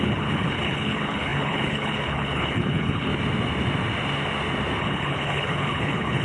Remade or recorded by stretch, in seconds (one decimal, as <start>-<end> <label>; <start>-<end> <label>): 0.0-3.1 remade; 3.1-4.8 recorded; 4.8-6.2 remade